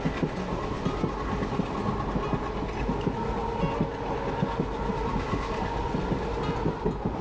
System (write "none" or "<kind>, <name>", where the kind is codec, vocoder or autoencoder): none